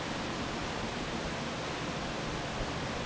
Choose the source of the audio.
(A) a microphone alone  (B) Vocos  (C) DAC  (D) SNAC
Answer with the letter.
A